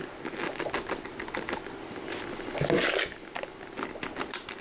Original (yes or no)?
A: yes